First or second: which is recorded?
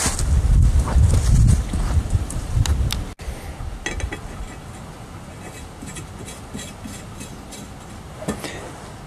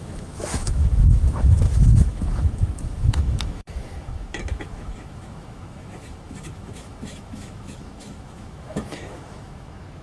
first